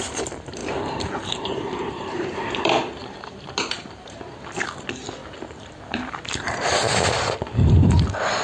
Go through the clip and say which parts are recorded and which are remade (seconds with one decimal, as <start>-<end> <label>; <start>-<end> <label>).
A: 0.0-0.6 recorded; 0.6-2.5 remade; 2.5-3.0 recorded; 3.0-4.3 remade; 4.3-5.2 recorded; 5.2-8.0 remade; 8.0-8.4 recorded